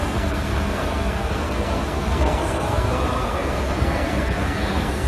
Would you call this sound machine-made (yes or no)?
yes